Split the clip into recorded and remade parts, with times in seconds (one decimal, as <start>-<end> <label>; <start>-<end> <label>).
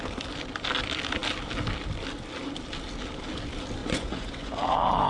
0.0-3.8 recorded; 3.8-4.5 remade; 4.5-5.1 recorded